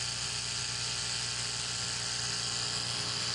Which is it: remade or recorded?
recorded